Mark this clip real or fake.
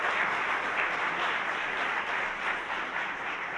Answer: real